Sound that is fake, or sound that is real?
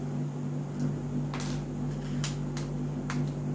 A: real